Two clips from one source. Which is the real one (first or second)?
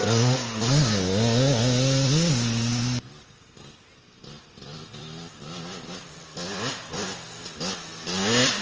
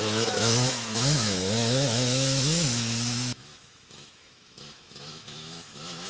first